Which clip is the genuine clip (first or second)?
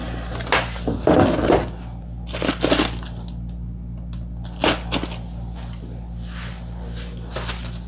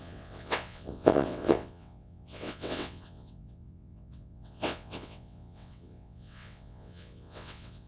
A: first